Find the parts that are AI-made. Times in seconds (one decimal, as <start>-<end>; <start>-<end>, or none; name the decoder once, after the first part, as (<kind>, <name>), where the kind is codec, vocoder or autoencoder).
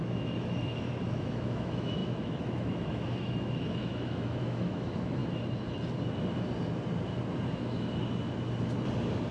0.0-5.2 (autoencoder, DAC-VAE)